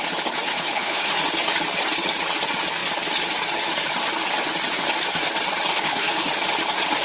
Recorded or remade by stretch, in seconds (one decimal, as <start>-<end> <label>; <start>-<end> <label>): 0.0-0.5 recorded; 0.5-1.1 remade; 1.1-5.7 recorded; 5.7-6.3 remade; 6.3-7.0 recorded